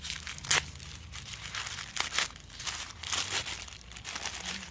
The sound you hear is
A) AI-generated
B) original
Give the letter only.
B